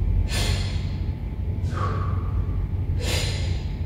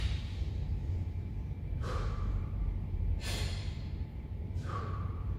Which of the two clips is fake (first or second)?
second